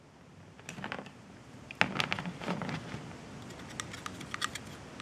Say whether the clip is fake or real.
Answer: real